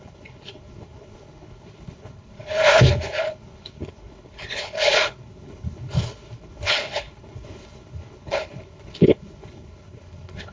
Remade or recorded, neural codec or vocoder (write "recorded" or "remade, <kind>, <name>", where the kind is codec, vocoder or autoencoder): remade, codec, HILCodec